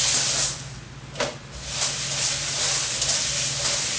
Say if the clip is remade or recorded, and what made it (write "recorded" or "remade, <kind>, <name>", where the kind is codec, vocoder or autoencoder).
recorded